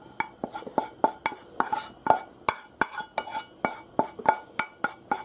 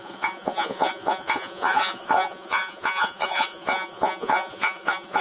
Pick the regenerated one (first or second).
second